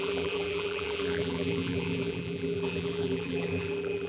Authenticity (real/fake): fake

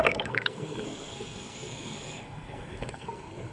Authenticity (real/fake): fake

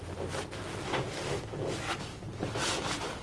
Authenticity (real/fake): real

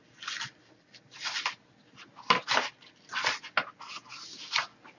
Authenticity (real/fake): real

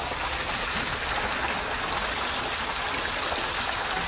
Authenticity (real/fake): real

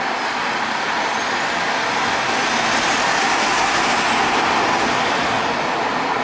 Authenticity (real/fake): real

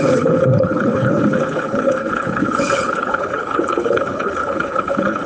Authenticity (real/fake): fake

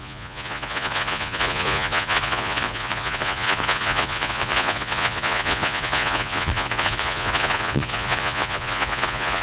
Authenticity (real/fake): fake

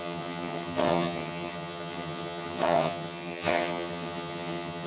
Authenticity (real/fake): fake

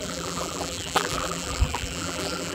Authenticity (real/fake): fake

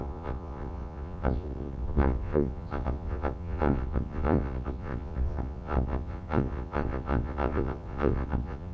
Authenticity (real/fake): fake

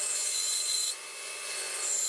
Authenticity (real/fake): fake